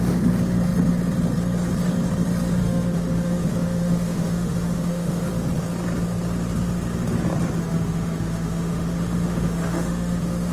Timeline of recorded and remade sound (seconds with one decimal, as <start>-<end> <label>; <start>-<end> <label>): 0.0-2.6 recorded; 2.6-5.3 remade; 5.3-7.6 recorded; 7.6-10.5 remade